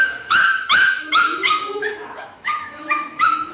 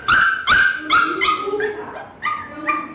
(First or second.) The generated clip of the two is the first